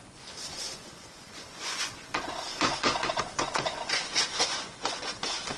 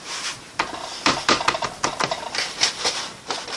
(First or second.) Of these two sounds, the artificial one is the first